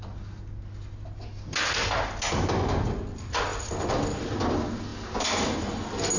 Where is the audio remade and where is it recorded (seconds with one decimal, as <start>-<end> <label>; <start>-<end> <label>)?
0.0-6.2 recorded